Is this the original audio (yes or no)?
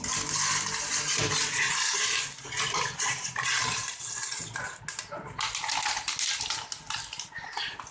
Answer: yes